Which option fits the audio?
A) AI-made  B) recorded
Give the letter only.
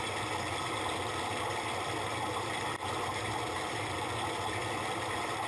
B